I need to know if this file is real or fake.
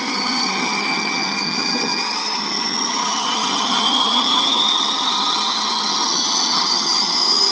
fake